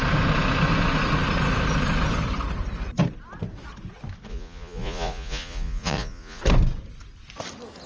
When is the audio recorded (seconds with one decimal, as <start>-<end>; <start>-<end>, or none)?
0.0-4.3; 6.4-7.9